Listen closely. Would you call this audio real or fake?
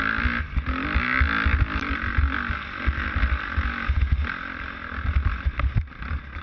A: real